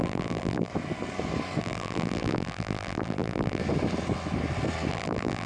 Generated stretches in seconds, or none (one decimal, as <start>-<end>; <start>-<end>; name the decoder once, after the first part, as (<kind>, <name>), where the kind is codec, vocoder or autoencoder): 0.0-0.7 (vocoder, BigVGAN v2); 1.6-3.6; 4.9-5.5